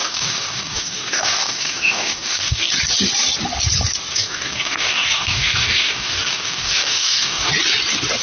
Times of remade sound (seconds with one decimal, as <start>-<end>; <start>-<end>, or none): 0.0-2.7; 4.1-7.5